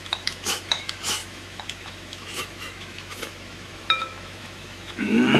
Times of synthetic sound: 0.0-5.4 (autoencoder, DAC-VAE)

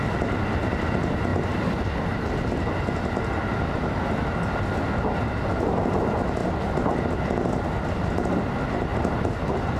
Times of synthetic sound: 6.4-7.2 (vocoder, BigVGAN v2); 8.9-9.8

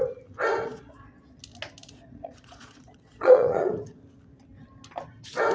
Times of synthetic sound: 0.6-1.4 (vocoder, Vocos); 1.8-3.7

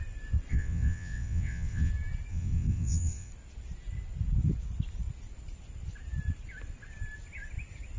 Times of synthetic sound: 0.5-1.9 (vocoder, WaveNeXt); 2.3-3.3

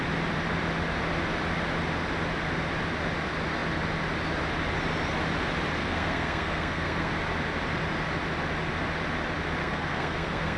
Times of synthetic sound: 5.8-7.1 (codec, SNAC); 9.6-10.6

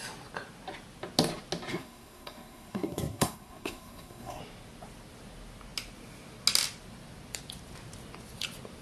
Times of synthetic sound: 1.7-4.4 (codec, SNAC)

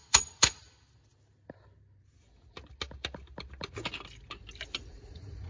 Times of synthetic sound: 0.0-0.5 (vocoder, Vocos); 4.9-5.5